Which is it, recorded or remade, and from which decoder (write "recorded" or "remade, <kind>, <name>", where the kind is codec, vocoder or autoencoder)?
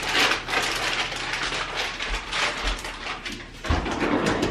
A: recorded